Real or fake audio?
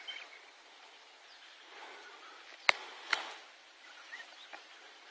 real